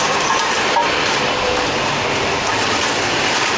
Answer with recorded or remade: recorded